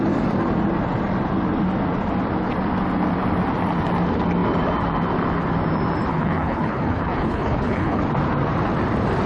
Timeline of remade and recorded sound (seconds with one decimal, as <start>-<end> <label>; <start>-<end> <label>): 0.0-6.1 recorded; 6.1-8.0 remade; 8.0-9.3 recorded